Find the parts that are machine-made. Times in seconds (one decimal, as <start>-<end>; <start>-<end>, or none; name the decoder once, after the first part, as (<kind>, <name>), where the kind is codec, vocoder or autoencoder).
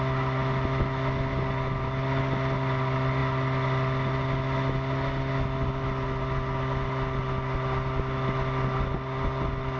none